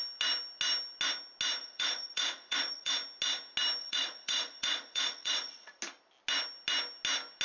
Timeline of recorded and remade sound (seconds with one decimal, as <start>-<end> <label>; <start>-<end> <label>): 0.0-1.6 recorded; 1.6-2.9 remade; 2.9-3.8 recorded; 3.8-5.8 remade; 5.8-7.4 recorded